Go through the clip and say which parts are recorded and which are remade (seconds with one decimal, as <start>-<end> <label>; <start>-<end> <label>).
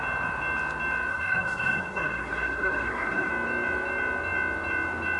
0.0-1.1 recorded; 1.1-3.3 remade; 3.3-5.2 recorded